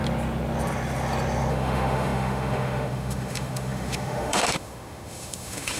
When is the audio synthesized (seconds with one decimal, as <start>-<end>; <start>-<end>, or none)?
1.5-5.8